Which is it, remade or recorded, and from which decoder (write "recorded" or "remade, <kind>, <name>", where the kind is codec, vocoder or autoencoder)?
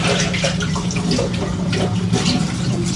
recorded